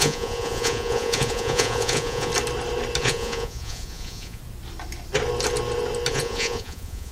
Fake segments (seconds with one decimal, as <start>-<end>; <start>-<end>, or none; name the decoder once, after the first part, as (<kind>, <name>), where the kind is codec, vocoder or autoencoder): 0.0-2.3 (vocoder, Vocos); 3.0-4.4; 6.1-7.1